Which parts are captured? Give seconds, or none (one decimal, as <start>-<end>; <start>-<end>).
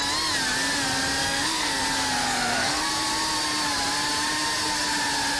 0.0-1.2; 1.8-2.2; 2.9-5.4